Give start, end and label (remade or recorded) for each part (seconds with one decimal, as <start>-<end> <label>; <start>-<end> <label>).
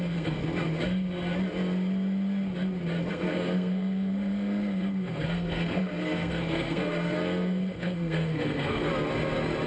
0.0-0.4 remade; 0.4-3.1 recorded; 3.1-8.9 remade; 8.9-9.7 recorded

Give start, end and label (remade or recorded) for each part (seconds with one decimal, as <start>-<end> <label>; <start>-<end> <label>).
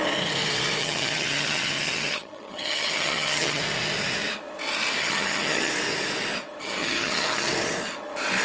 0.0-0.8 recorded; 0.8-3.6 remade; 3.6-5.0 recorded; 5.0-5.7 remade; 5.7-6.6 recorded; 6.6-7.5 remade; 7.5-8.4 recorded